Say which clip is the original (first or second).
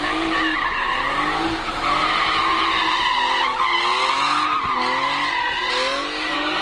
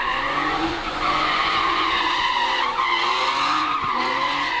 first